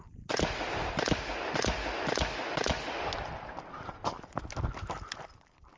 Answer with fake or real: real